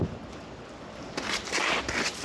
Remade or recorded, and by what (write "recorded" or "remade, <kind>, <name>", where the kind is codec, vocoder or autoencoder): recorded